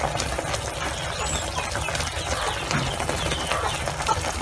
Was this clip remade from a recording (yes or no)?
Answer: no